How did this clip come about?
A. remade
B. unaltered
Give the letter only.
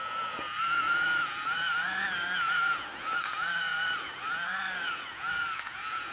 A